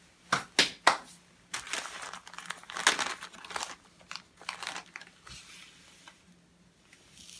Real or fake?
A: real